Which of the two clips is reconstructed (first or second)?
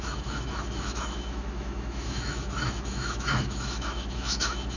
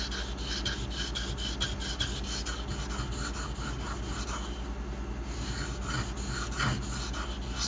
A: first